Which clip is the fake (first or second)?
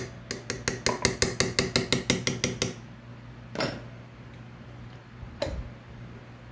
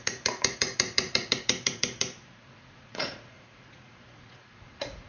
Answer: second